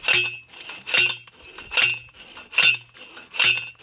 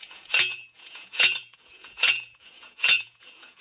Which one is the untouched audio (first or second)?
first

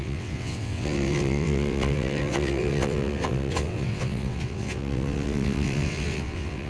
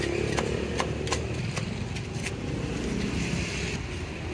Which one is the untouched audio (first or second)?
second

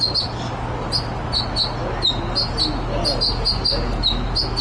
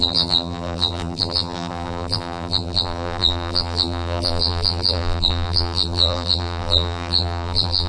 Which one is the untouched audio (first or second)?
first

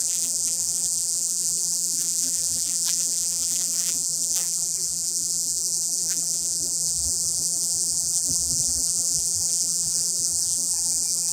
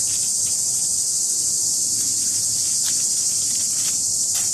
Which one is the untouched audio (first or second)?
second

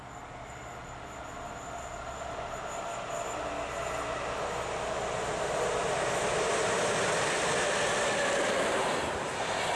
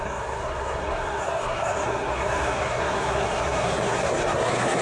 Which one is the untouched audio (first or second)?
first